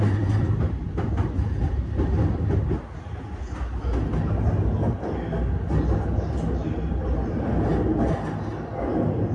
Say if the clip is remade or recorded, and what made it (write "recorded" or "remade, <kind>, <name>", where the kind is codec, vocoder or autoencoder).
recorded